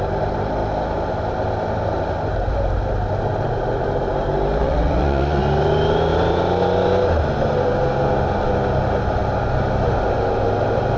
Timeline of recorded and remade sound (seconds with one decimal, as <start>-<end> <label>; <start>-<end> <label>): 0.0-4.6 recorded; 4.6-5.4 remade; 5.4-11.0 recorded